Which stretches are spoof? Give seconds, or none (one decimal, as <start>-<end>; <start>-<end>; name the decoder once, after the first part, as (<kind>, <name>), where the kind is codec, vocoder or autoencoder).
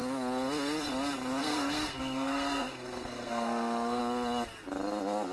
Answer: 1.4-4.0 (codec, SNAC)